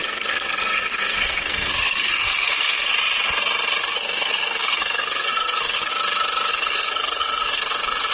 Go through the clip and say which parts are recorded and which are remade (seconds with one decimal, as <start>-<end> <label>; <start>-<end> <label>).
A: 0.0-2.9 remade; 2.9-3.8 recorded; 3.8-5.9 remade; 5.9-6.5 recorded; 6.5-8.1 remade